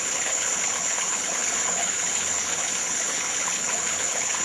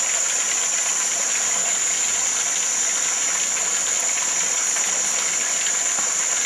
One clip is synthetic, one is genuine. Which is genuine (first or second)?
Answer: second